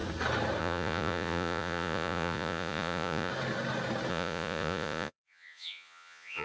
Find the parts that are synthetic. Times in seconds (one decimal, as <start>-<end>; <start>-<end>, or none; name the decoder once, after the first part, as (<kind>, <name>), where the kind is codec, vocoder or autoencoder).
0.6-3.3 (vocoder, Vocos); 4.1-6.4